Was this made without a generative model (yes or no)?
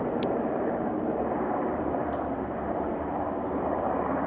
no